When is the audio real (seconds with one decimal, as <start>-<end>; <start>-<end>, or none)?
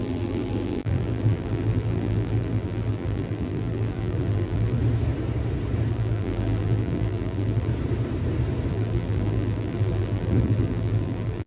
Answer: 4.8-5.9; 7.7-8.7